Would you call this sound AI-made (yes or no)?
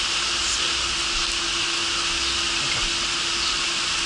no